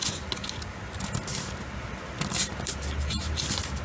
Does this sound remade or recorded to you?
recorded